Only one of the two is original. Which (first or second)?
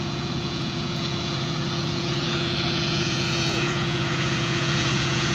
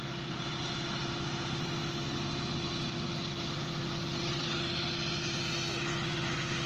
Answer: second